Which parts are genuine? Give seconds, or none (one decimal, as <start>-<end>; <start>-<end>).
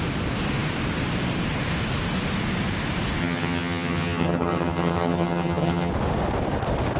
0.0-3.2; 5.9-7.0